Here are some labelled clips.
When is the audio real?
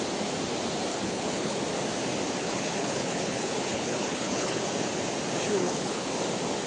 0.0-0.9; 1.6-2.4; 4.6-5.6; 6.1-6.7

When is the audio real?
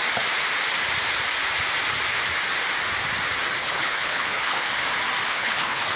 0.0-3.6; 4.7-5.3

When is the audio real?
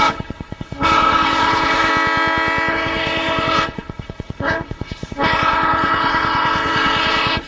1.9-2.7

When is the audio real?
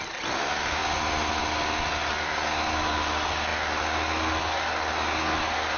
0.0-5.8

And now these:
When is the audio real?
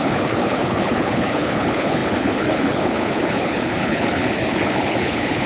none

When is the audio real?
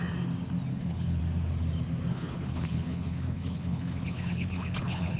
0.0-0.7; 1.2-2.1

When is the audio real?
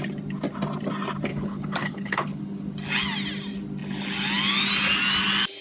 0.0-1.3; 2.4-5.6